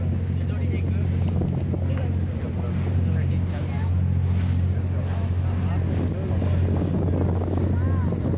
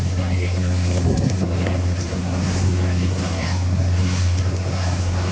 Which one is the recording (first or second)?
first